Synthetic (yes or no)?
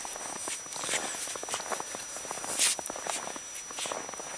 no